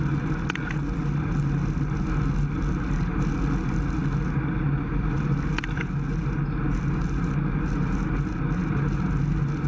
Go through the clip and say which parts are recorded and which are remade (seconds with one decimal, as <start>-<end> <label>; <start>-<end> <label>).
0.0-9.7 recorded